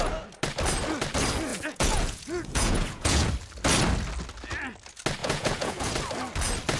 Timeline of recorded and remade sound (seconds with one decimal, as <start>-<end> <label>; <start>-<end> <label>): 0.0-1.5 recorded; 1.5-3.3 remade; 3.3-5.2 recorded; 5.2-5.9 remade; 5.9-6.8 recorded